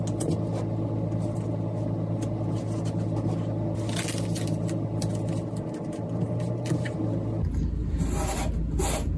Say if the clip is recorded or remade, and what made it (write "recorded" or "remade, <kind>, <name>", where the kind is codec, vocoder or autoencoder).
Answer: recorded